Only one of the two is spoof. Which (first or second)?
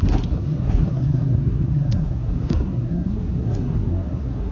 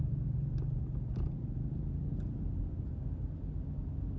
first